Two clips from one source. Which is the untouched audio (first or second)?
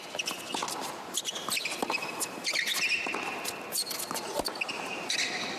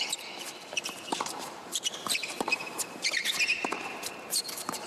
first